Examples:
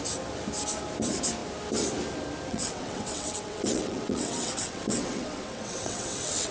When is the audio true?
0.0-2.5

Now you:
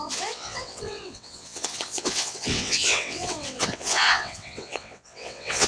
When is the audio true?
none

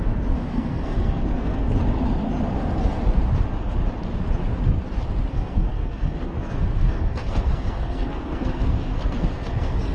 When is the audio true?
1.7-5.3

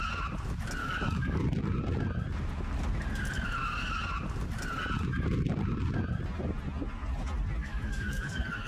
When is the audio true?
0.0-0.8; 1.4-7.6

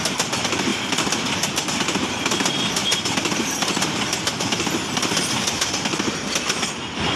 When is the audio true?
0.0-2.8; 5.7-7.2

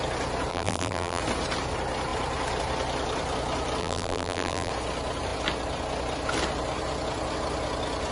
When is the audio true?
0.0-0.5; 1.2-3.8; 4.7-8.1